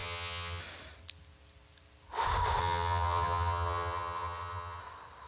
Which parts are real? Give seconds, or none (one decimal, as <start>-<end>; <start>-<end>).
0.6-2.6; 4.8-5.3